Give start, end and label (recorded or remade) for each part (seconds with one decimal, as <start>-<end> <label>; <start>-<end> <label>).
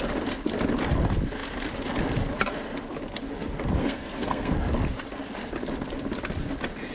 0.0-3.8 recorded; 3.8-4.5 remade; 4.5-6.9 recorded